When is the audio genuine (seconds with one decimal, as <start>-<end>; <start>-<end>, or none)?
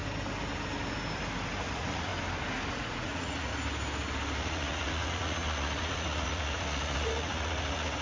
0.0-1.6; 2.1-2.7; 3.5-4.4